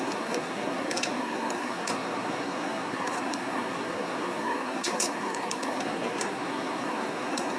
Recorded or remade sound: remade